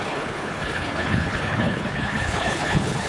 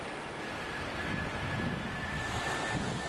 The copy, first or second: first